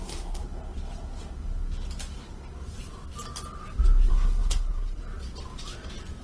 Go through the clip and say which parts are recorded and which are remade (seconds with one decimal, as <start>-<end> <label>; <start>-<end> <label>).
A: 0.0-0.4 remade; 0.4-4.1 recorded; 4.1-5.0 remade; 5.0-6.2 recorded